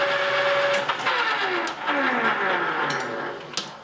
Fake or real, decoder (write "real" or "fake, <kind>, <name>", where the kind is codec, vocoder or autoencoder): real